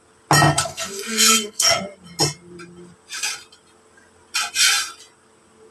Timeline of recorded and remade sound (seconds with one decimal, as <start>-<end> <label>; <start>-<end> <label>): 0.0-0.5 recorded; 0.5-1.8 remade; 1.8-5.7 recorded